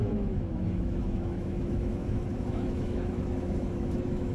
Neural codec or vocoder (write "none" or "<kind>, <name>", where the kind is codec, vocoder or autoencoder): autoencoder, DAC-VAE